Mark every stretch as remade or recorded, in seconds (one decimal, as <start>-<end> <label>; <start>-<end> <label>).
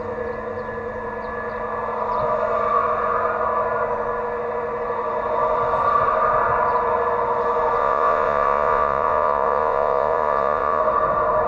0.0-7.8 recorded; 7.8-10.8 remade; 10.8-11.5 recorded